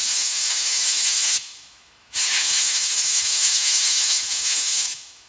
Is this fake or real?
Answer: fake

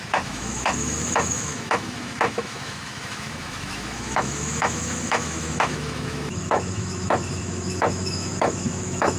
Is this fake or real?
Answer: fake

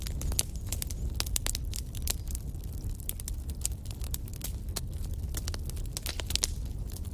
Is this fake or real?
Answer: real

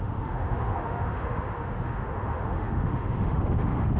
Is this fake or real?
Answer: fake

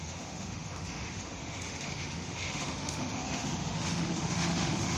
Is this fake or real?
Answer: fake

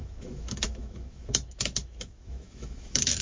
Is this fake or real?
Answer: fake